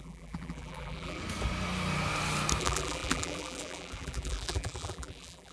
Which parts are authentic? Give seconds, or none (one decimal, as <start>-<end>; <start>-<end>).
1.2-2.6